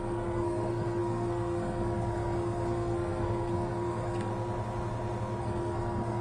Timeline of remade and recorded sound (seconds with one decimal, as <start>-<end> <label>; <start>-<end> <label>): 0.0-4.3 remade; 4.3-5.4 recorded; 5.4-6.2 remade